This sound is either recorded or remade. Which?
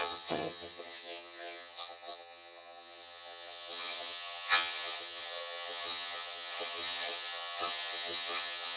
remade